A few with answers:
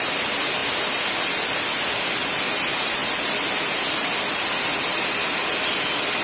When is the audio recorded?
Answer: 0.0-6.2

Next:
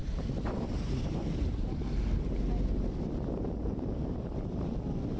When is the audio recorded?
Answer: 2.2-3.6; 4.3-5.2

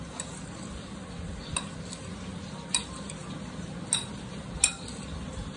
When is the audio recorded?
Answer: 0.0-5.6